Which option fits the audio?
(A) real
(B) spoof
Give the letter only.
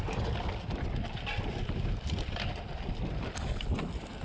A